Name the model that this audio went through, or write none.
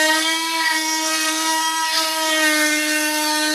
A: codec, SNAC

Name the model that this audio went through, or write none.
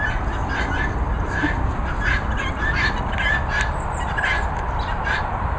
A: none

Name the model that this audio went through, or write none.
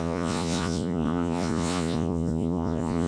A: vocoder, Vocos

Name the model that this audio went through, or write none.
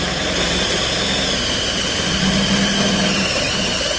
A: none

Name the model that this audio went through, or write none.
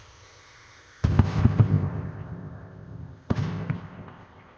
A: codec, ZipCodec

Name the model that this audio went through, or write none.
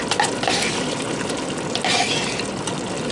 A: none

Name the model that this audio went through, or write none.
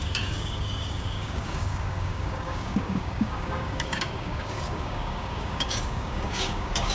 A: codec, DAC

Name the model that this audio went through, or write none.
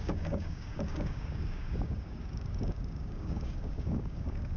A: codec, DAC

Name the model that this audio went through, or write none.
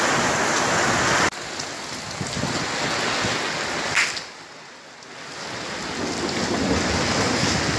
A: none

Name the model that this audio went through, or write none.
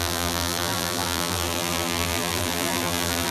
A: vocoder, BigVGAN v2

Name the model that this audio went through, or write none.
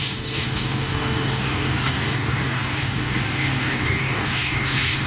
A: codec, DAC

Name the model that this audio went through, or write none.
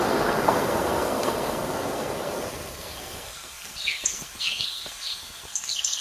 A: codec, SNAC